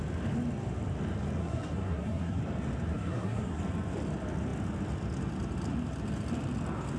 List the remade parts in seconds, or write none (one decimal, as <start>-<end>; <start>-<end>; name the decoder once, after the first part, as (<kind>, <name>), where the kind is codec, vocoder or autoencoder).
1.4-2.4 (codec, SNAC); 2.9-3.6